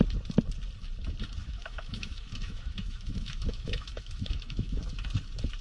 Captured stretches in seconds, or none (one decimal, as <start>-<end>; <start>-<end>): 0.0-1.4; 4.8-5.6